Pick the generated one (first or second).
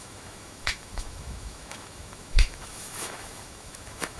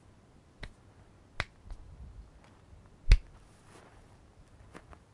first